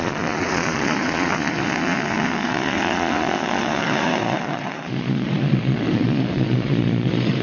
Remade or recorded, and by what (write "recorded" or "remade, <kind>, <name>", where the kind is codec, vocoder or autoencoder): remade, vocoder, Vocos